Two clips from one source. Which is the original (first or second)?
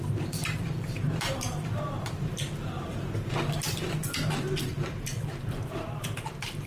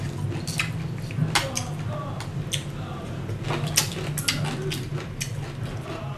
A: second